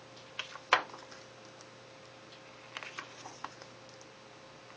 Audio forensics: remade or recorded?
recorded